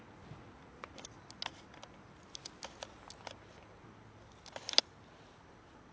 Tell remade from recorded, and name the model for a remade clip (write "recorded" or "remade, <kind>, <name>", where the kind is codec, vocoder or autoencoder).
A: recorded